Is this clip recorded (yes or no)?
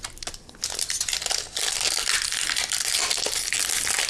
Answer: yes